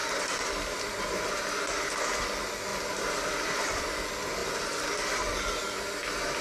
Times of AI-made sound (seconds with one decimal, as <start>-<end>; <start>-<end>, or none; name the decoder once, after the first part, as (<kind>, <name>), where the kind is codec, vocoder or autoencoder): 0.0-0.9 (vocoder, BigVGAN v2)

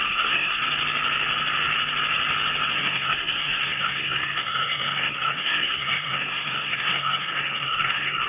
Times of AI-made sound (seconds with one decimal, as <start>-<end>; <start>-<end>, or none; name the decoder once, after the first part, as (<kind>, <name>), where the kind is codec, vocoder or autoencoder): 0.0-0.6 (codec, SNAC); 2.7-8.3